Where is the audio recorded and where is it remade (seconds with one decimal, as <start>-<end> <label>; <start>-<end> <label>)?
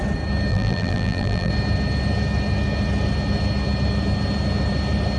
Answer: 0.0-0.5 recorded; 0.5-1.5 remade; 1.5-5.2 recorded